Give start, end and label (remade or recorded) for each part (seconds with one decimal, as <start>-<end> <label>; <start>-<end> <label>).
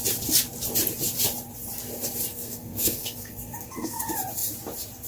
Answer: 0.0-2.3 recorded; 2.3-4.0 remade; 4.0-5.1 recorded